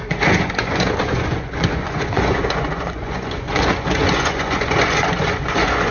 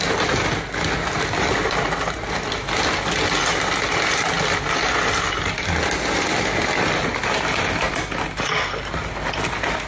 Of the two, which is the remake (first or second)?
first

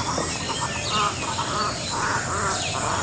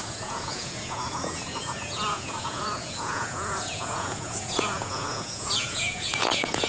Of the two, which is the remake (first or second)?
second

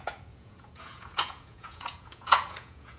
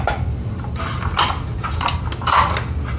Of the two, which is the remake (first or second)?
first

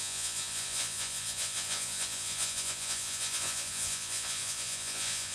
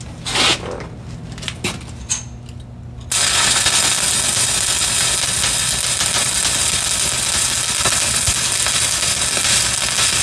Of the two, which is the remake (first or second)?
first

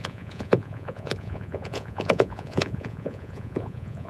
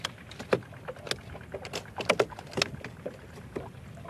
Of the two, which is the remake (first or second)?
first